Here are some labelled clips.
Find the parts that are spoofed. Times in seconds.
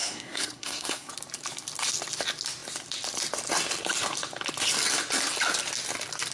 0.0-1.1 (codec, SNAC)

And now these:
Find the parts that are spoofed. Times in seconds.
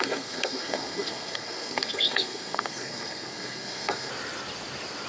0.0-4.1 (codec, SNAC)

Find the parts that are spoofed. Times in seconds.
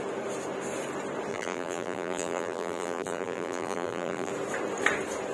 1.3-4.3 (vocoder, BigVGAN v2)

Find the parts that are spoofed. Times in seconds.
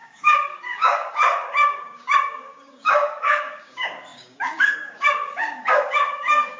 0.0-6.6 (codec, DAC)